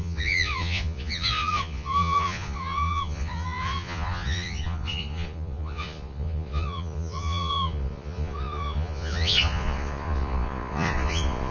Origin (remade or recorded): remade